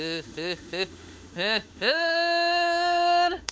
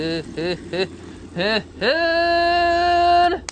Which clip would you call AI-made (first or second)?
first